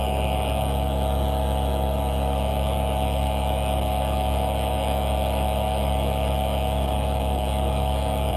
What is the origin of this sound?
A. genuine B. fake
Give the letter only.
B